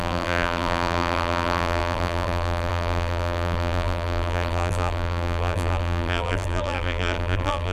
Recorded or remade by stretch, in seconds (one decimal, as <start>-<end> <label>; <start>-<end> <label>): 0.0-7.7 remade